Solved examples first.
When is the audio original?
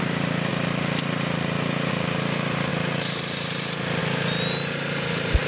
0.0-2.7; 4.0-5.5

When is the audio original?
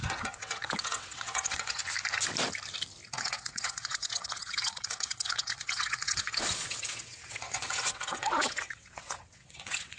1.8-3.1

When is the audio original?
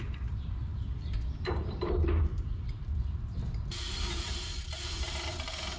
none